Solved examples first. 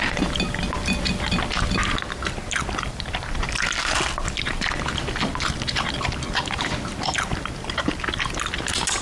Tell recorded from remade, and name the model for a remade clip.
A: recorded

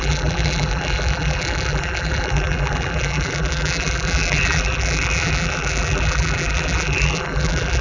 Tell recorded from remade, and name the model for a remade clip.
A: remade, vocoder, BigVGAN v2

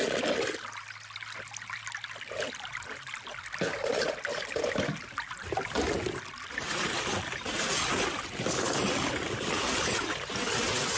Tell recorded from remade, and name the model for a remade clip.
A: recorded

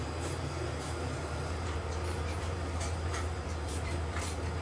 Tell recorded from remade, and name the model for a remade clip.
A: remade, vocoder, BigVGAN v2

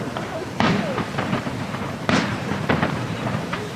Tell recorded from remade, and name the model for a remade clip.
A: remade, vocoder, BigVGAN v2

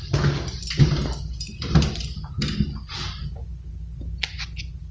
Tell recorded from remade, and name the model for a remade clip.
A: recorded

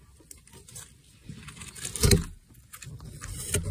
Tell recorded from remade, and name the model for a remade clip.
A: recorded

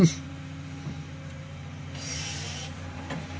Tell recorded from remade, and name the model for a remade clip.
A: remade, vocoder, BigVGAN v2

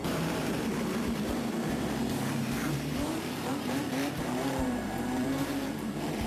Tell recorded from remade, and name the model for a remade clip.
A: remade, vocoder, BigVGAN v2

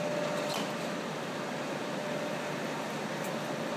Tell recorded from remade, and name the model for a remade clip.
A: recorded